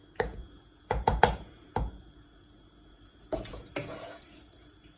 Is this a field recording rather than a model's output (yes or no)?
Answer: no